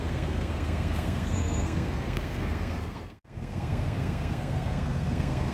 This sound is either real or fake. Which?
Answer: fake